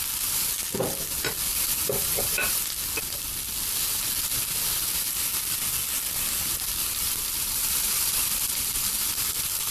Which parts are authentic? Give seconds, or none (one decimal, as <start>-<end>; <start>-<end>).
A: 0.0-1.5; 2.6-6.8; 8.9-9.7